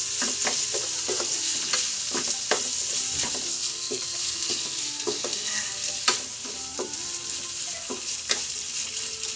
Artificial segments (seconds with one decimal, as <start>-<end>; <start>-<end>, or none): 3.5-6.0